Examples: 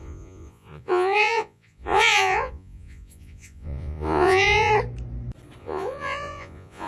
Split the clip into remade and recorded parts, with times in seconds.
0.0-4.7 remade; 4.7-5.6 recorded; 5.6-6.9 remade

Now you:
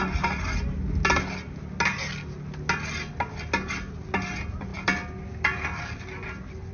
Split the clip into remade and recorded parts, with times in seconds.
0.0-6.7 recorded